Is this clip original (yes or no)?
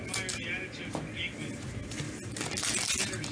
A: yes